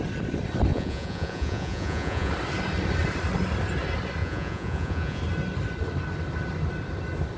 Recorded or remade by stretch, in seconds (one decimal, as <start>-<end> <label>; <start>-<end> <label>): 0.0-0.7 recorded; 0.7-2.3 remade; 2.3-4.2 recorded; 4.2-5.2 remade; 5.2-7.4 recorded